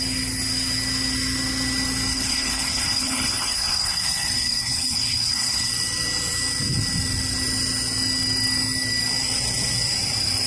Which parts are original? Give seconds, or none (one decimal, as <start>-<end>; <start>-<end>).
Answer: 0.0-2.1; 5.7-10.5